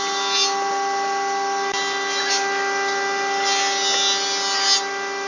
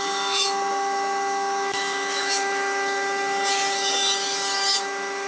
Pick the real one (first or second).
first